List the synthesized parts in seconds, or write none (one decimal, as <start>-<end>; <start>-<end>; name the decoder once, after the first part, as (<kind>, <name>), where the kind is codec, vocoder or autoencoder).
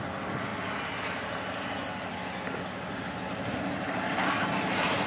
none